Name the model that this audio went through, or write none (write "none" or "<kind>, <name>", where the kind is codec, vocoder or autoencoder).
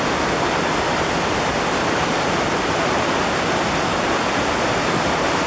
none